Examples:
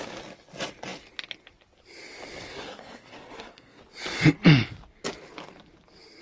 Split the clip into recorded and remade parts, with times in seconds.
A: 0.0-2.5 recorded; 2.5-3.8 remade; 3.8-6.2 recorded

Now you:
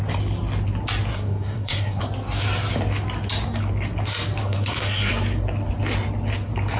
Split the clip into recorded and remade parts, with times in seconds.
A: 0.0-1.1 recorded; 1.1-2.0 remade; 2.0-4.4 recorded; 4.4-5.1 remade; 5.1-6.8 recorded

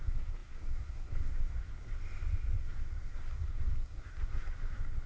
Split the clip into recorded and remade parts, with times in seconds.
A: 0.0-1.8 remade; 1.8-2.6 recorded; 2.6-5.1 remade

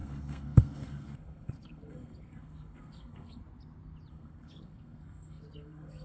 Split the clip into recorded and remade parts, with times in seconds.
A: 0.0-3.4 remade; 3.4-4.1 recorded; 4.1-6.0 remade